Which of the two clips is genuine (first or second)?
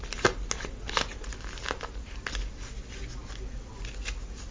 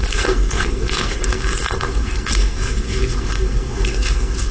first